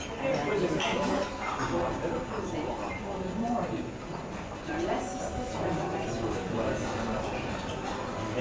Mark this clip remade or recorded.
recorded